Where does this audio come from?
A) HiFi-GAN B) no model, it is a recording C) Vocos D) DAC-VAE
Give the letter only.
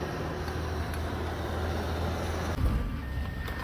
B